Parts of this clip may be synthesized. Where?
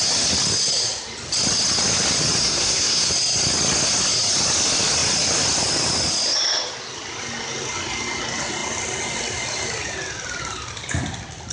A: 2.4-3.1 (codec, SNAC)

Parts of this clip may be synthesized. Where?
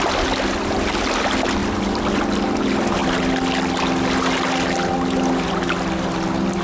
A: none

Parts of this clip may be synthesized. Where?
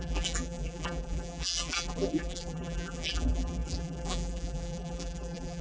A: 0.0-5.6 (vocoder, BigVGAN v2)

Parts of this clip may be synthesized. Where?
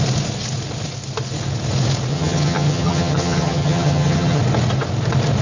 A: 2.1-4.4 (vocoder, HiFi-GAN)